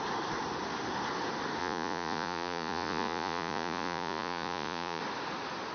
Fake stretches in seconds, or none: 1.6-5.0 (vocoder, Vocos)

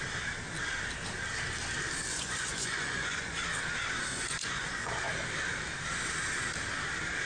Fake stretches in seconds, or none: 2.1-3.4 (vocoder, Vocos); 4.1-4.9